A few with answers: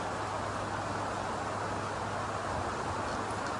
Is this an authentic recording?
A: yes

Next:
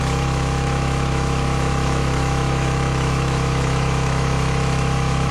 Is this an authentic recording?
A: no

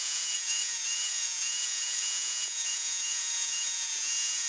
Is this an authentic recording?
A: no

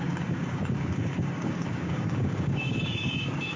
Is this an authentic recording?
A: no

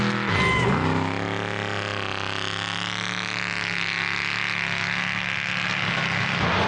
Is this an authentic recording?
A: yes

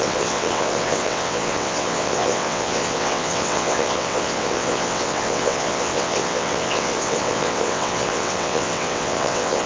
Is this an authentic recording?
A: no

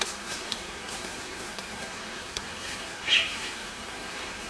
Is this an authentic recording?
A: no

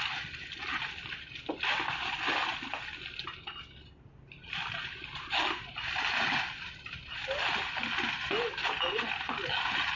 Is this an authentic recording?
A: yes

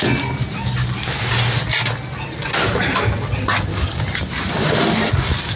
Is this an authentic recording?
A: yes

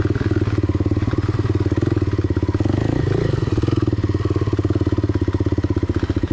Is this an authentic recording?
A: yes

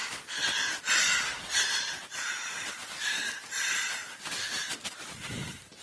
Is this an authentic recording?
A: yes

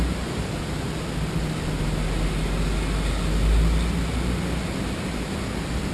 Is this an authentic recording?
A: yes